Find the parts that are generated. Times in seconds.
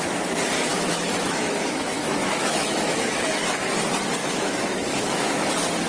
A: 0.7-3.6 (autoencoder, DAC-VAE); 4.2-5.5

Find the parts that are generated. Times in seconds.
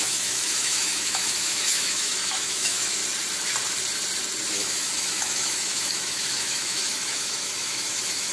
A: 0.0-3.0 (autoencoder, DAC-VAE); 4.5-8.3